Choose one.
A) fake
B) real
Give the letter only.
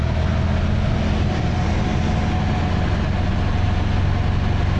B